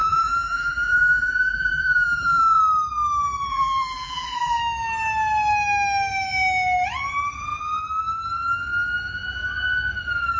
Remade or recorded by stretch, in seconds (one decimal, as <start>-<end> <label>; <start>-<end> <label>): 0.0-2.6 remade; 2.6-3.5 recorded; 3.5-4.6 remade; 4.6-10.4 recorded